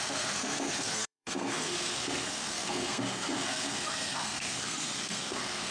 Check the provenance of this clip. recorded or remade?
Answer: remade